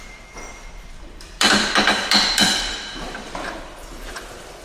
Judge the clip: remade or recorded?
remade